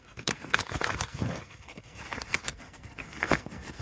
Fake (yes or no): yes